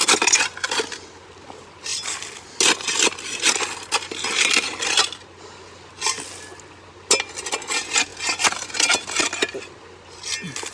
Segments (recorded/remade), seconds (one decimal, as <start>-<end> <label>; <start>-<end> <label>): 0.0-10.7 recorded